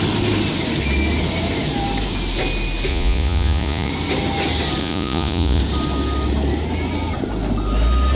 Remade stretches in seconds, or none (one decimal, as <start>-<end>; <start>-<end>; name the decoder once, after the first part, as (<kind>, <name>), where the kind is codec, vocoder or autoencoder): 2.9-3.9 (vocoder, Vocos); 4.8-5.6